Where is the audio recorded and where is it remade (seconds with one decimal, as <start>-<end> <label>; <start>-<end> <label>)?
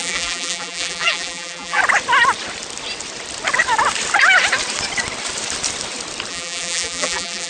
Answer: 0.0-1.8 remade; 1.8-6.3 recorded; 6.3-7.5 remade